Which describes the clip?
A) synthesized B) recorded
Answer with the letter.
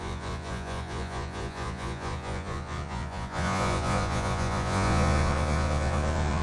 A